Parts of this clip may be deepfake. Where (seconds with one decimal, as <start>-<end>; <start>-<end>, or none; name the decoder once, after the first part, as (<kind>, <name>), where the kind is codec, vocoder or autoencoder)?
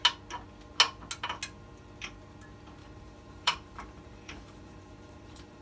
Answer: 2.8-5.6 (vocoder, BigVGAN v2)